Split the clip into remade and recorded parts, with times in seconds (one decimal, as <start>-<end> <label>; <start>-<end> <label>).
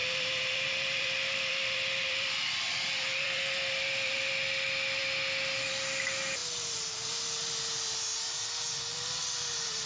0.0-4.3 remade; 4.3-6.4 recorded; 6.4-8.0 remade; 8.0-8.9 recorded; 8.9-9.9 remade